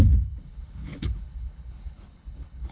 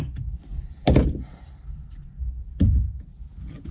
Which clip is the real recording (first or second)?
second